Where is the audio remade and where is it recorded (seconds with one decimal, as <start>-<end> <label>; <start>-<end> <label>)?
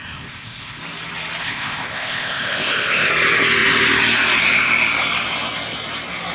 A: 0.0-0.8 remade; 0.8-1.4 recorded; 1.4-3.1 remade; 3.1-6.3 recorded